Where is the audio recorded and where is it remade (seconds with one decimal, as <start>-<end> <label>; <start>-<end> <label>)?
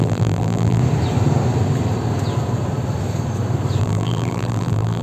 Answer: 0.0-0.8 remade; 0.8-3.8 recorded; 3.8-5.0 remade